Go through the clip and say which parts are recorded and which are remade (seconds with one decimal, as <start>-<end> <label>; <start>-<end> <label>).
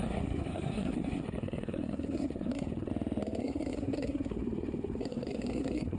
0.0-2.9 remade; 2.9-3.4 recorded; 3.4-6.0 remade